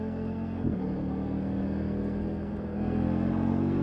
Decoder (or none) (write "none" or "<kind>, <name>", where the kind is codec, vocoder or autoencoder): codec, SNAC